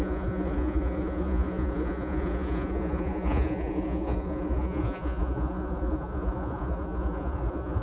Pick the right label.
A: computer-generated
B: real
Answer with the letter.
A